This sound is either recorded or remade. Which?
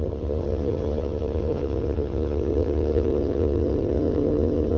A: remade